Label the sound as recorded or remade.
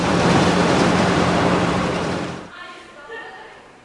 remade